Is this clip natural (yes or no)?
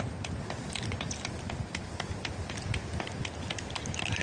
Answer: yes